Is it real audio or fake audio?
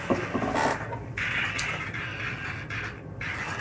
real